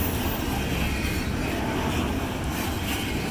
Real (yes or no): yes